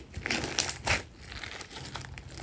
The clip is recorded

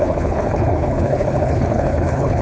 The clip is remade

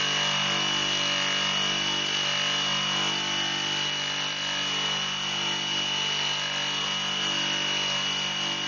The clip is recorded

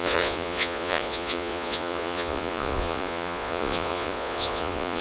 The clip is remade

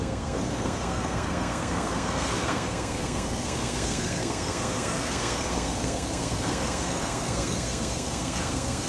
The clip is remade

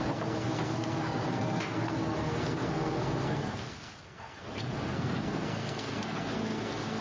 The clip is remade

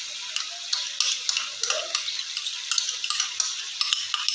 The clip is recorded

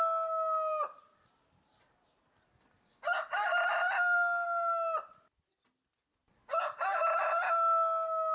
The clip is recorded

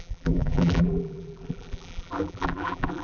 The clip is remade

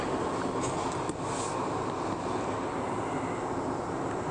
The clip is recorded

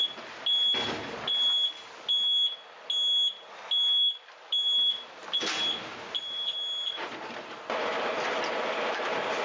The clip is recorded